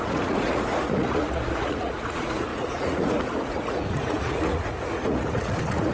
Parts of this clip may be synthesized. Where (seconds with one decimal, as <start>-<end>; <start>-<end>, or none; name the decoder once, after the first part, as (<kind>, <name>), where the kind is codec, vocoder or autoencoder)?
0.0-5.9 (vocoder, Vocos)